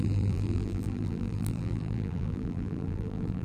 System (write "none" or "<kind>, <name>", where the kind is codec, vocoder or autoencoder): vocoder, BigVGAN v2